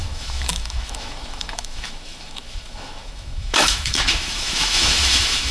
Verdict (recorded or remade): remade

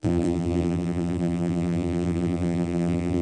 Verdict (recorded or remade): remade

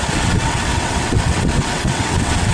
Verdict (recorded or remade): remade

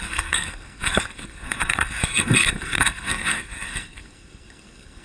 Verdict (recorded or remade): remade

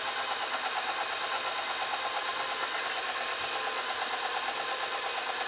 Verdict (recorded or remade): recorded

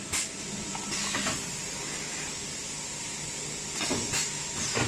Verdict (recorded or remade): recorded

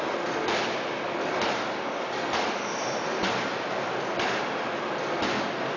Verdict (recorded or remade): recorded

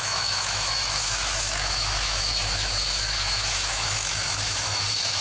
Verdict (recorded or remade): remade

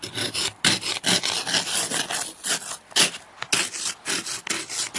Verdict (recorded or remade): recorded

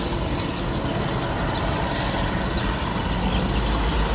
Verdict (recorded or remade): recorded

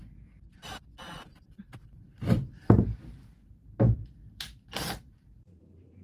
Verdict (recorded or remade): remade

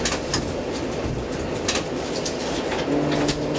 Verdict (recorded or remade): recorded